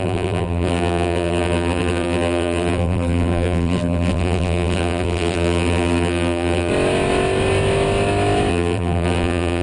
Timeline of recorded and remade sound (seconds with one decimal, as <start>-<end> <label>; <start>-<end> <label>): 0.0-6.7 remade; 6.7-8.5 recorded; 8.5-9.6 remade